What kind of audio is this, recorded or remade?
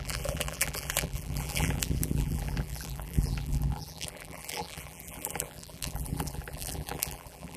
remade